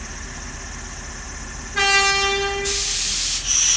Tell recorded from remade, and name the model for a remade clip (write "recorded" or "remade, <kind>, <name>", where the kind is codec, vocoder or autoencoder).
recorded